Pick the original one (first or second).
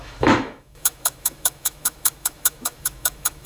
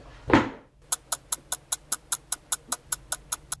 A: second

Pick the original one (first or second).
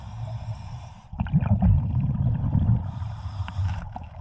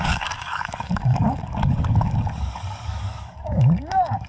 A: first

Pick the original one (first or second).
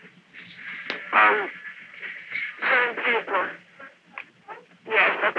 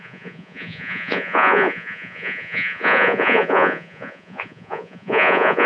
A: first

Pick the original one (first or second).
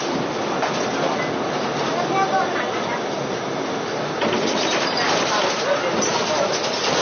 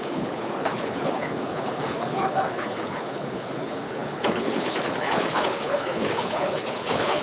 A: first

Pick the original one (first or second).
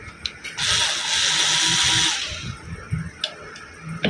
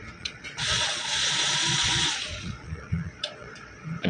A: first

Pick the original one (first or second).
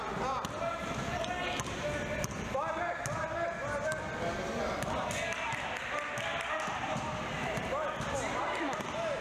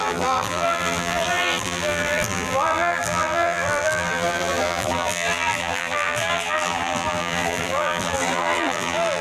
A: first